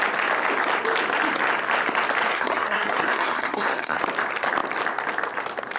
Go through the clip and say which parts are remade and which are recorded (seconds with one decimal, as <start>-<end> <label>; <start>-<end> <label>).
0.0-2.3 recorded; 2.3-4.0 remade; 4.0-5.8 recorded